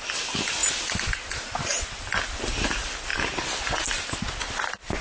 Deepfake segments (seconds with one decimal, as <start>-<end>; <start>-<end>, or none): none